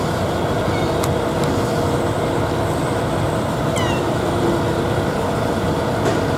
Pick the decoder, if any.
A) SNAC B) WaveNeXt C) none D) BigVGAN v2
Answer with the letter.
D